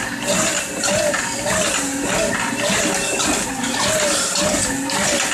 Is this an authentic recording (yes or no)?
yes